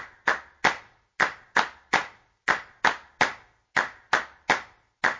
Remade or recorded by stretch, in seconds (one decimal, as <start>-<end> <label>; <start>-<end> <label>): 0.0-5.2 recorded